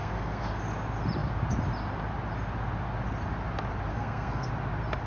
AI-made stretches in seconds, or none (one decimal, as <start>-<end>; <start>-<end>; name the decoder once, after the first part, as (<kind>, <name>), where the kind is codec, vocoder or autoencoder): 0.0-0.5 (codec, SNAC); 3.9-4.5